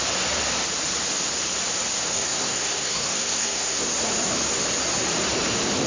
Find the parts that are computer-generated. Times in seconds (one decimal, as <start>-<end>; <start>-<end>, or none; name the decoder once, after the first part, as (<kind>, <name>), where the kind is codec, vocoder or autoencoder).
2.1-3.8 (codec, SNAC)